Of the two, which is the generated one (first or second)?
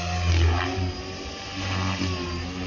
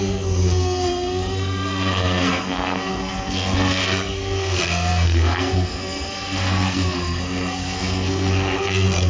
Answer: second